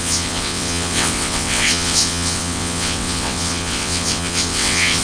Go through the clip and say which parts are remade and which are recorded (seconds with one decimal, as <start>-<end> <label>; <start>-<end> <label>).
0.0-5.0 remade